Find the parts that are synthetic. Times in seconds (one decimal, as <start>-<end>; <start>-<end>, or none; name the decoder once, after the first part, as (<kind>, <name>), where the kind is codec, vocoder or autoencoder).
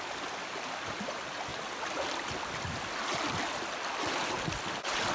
0.0-1.5 (vocoder, BigVGAN v2); 4.6-5.1